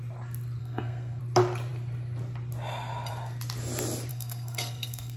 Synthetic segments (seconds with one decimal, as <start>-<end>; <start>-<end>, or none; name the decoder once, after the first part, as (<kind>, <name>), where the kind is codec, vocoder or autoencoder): 0.6-1.2 (codec, SNAC); 4.1-5.2